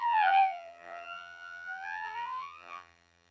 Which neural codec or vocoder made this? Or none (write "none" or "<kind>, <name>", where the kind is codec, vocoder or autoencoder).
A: vocoder, BigVGAN v2